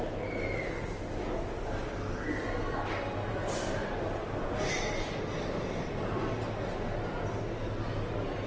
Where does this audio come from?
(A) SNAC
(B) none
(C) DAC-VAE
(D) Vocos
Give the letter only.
B